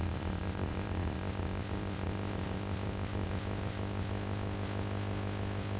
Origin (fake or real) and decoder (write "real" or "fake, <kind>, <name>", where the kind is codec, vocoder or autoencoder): fake, codec, ZipCodec